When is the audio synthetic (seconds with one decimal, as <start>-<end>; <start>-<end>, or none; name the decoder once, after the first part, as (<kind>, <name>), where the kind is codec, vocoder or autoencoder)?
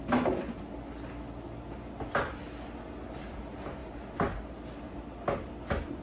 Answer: 3.8-4.8 (vocoder, BigVGAN v2)